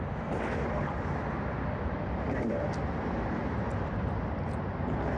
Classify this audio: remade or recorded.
recorded